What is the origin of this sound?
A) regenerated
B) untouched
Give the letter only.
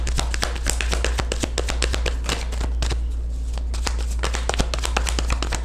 B